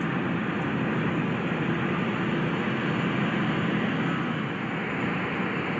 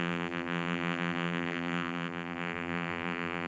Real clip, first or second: first